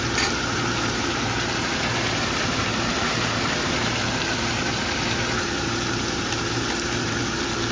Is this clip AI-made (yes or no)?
yes